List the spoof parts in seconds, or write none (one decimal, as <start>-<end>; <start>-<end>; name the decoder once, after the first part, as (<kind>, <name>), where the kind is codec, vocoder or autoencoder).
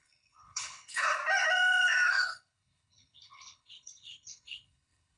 0.0-1.2 (codec, HILCodec); 2.1-5.2